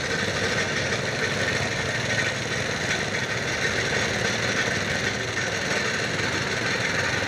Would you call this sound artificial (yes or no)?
no